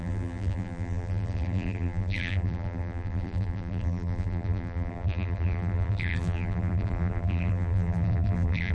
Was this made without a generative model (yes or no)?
no